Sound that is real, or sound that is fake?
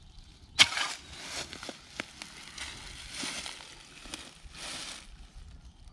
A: real